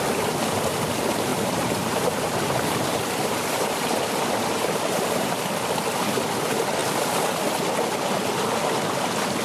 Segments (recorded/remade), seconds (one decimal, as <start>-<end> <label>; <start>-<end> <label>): 0.0-1.3 recorded; 1.3-5.3 remade; 5.3-9.4 recorded